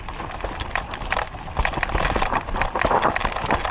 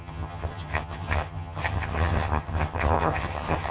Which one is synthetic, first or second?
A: second